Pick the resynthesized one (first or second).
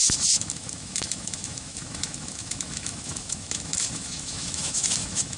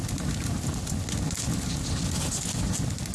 first